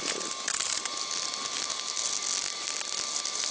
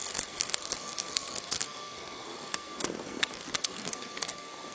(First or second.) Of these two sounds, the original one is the first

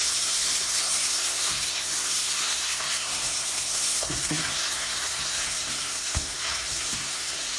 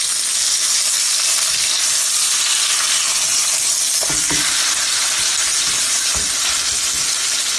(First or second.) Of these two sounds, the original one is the second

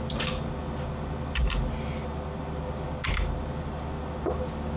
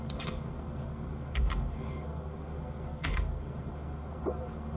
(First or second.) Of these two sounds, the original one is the first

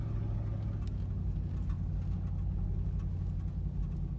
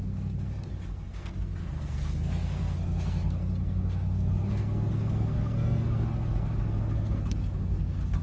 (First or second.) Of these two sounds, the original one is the first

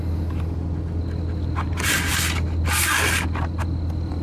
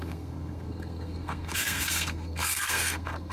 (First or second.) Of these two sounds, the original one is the first